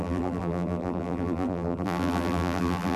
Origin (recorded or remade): remade